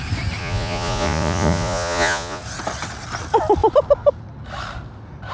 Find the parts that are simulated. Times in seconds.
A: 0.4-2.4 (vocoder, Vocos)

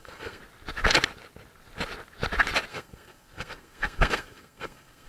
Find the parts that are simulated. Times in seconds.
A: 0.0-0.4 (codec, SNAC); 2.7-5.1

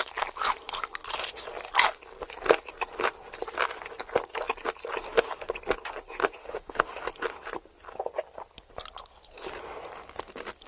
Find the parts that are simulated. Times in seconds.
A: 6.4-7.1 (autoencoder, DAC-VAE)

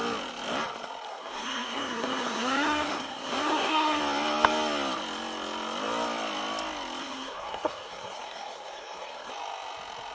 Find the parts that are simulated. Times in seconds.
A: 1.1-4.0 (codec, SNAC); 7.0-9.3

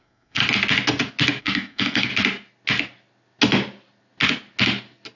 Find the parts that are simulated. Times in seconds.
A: 0.0-0.4 (codec, SNAC); 1.4-2.1